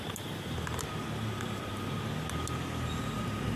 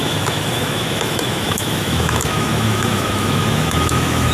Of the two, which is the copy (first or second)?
second